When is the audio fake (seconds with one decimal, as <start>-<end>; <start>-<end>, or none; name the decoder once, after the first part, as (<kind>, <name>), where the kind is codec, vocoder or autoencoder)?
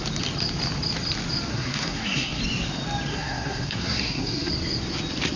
1.5-2.4 (codec, SNAC); 3.1-4.5